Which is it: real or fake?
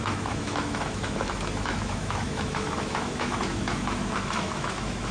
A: fake